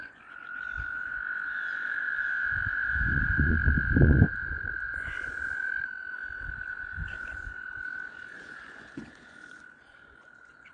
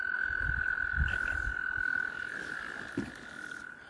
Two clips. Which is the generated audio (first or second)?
first